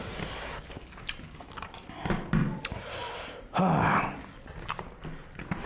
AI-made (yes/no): no